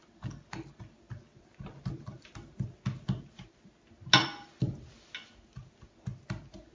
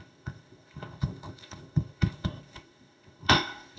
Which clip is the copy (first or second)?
second